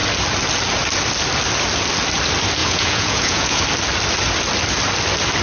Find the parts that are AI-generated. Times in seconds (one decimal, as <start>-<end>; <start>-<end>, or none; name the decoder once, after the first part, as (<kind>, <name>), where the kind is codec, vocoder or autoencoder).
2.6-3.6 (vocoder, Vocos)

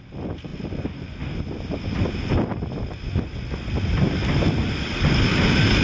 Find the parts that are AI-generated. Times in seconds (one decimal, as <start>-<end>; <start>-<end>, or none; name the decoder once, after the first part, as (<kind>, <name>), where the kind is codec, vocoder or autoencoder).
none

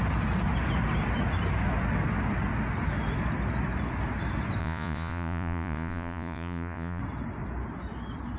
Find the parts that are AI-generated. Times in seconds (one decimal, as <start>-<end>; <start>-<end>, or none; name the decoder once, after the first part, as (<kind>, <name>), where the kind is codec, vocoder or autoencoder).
4.6-7.0 (vocoder, Vocos)